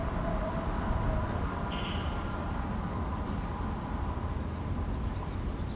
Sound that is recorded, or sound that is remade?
recorded